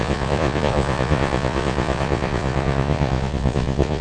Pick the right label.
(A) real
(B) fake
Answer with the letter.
B